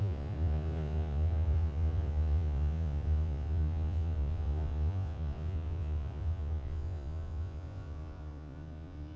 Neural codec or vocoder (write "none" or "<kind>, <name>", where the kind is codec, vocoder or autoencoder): vocoder, Vocos